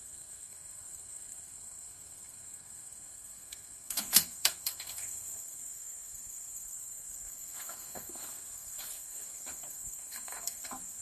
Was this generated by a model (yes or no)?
yes